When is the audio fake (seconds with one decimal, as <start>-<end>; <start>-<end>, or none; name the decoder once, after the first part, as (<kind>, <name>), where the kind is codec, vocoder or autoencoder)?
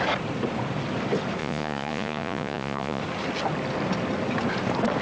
1.4-3.0 (vocoder, Vocos)